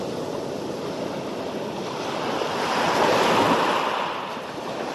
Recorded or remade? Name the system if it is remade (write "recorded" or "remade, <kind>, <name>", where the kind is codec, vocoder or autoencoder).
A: recorded